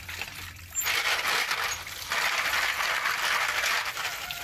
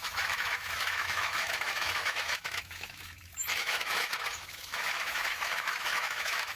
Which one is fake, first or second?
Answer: second